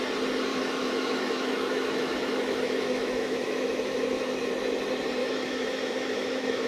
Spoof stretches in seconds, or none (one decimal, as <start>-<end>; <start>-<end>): 0.5-4.5; 5.2-6.7